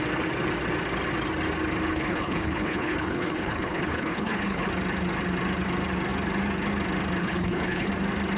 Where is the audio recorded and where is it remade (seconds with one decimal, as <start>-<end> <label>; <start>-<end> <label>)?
0.0-1.9 recorded; 1.9-4.7 remade; 4.7-7.2 recorded; 7.2-7.9 remade; 7.9-8.4 recorded